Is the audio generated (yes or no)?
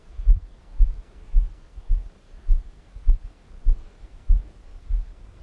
yes